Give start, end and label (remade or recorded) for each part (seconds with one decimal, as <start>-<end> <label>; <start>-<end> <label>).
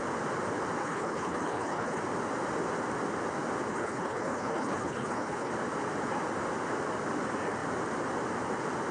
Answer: 0.0-0.8 recorded; 0.8-2.0 remade; 2.0-3.7 recorded; 3.7-5.5 remade; 5.5-8.9 recorded